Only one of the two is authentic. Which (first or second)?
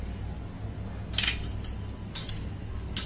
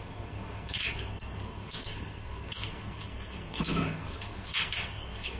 first